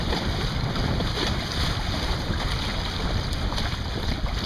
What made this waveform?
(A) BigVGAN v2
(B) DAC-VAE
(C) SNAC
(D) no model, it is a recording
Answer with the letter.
D